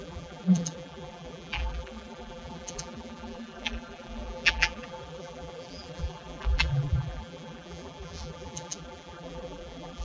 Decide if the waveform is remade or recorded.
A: remade